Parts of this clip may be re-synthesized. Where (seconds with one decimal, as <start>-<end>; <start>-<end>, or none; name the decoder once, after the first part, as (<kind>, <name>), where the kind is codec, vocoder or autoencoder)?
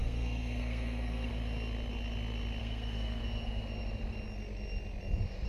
0.0-1.3 (codec, SNAC); 2.6-3.2